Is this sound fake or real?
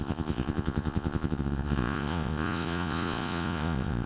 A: fake